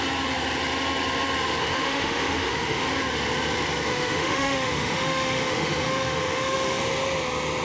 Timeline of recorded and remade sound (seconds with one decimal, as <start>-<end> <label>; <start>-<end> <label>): 0.0-1.6 recorded; 1.6-2.9 remade; 2.9-3.9 recorded; 3.9-6.8 remade; 6.8-7.6 recorded